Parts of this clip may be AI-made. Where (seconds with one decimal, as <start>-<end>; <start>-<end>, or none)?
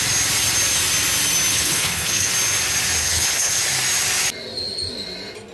1.5-2.3; 3.0-3.6